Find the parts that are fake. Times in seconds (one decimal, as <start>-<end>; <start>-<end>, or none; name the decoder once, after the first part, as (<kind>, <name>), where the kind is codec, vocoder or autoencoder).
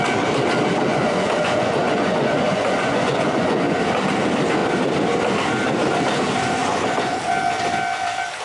0.9-3.8 (vocoder, Vocos); 6.6-7.3